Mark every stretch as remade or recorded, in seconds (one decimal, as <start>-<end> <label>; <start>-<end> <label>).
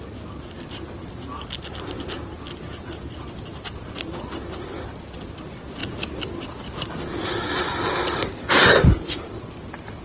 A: 0.0-10.0 recorded